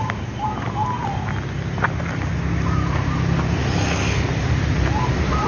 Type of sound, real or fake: real